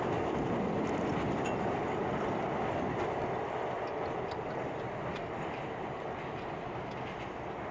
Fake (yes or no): no